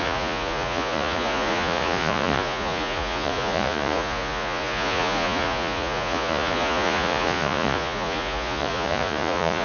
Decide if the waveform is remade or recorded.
remade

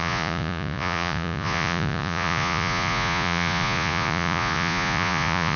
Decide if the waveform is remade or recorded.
remade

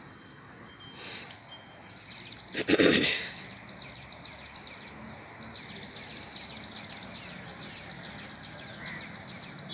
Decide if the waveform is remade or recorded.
recorded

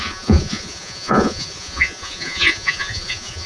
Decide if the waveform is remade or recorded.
remade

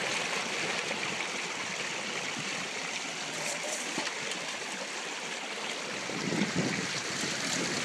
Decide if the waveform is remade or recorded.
recorded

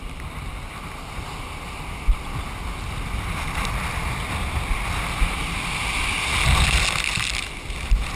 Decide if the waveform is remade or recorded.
recorded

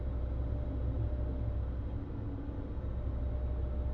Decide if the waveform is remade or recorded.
recorded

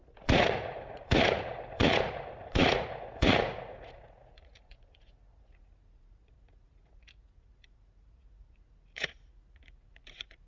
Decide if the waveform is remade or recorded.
remade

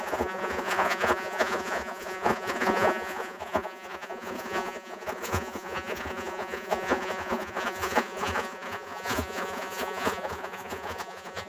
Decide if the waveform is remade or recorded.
remade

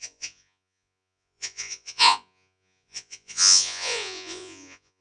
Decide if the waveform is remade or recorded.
remade